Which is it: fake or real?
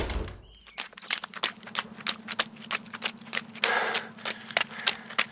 real